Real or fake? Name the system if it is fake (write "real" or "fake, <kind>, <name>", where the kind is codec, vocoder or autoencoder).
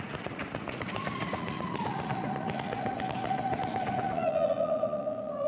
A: fake, vocoder, Vocos